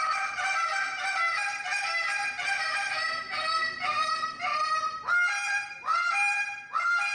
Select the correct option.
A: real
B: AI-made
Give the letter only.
B